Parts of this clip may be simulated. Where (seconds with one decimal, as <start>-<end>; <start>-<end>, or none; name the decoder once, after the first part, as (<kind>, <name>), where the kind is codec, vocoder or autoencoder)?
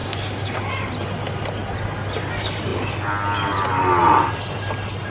2.7-4.3 (vocoder, BigVGAN v2)